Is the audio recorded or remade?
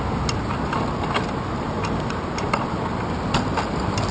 recorded